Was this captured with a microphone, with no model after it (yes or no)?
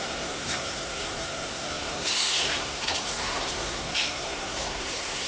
no